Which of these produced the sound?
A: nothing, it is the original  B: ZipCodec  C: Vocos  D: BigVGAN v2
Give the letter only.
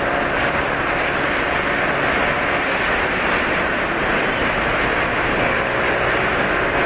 A